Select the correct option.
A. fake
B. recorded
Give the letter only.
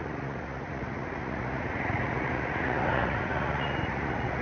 A